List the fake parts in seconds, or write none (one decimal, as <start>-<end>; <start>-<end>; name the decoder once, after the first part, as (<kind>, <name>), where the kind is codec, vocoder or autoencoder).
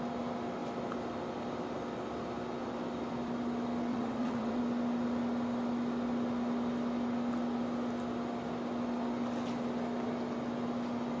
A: 3.9-4.6 (vocoder, WaveNeXt)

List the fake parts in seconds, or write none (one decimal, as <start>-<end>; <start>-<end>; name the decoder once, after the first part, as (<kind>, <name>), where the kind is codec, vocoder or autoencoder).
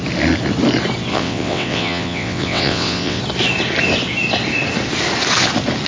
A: 1.1-3.2 (vocoder, WaveNeXt)